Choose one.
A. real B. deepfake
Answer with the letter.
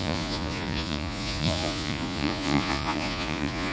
B